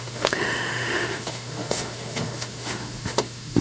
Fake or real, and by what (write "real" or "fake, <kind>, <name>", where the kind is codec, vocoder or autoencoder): fake, autoencoder, DAC-VAE